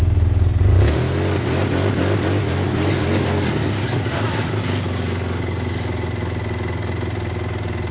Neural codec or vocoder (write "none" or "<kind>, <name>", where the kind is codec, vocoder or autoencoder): none